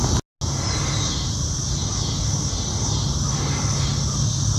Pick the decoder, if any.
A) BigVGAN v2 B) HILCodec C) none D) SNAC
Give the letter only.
C